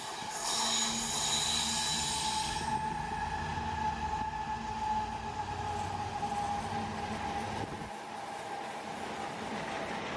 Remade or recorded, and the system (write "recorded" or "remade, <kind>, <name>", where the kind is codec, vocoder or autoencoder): recorded